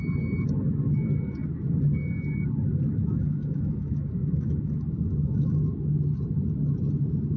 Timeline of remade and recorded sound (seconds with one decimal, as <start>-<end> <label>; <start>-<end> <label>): 0.0-3.0 recorded; 3.0-5.6 remade; 5.6-7.4 recorded